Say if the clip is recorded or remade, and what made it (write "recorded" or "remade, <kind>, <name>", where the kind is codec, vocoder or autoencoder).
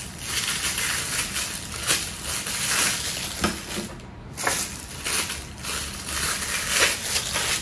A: recorded